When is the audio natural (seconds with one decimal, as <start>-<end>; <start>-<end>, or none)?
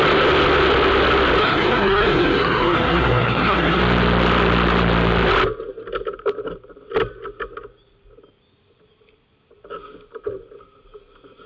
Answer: 0.0-1.4; 3.8-11.5